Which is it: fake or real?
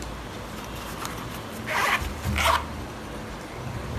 real